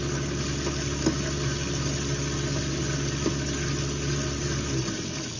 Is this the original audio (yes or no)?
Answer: yes